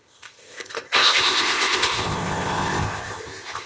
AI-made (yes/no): yes